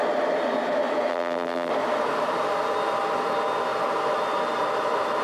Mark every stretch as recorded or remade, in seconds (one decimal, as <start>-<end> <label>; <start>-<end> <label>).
0.0-1.1 recorded; 1.1-1.7 remade; 1.7-5.2 recorded